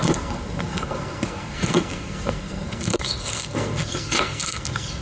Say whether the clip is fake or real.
fake